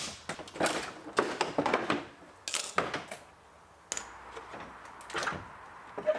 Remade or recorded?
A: recorded